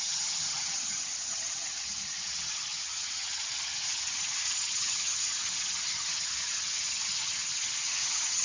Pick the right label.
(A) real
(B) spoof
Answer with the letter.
B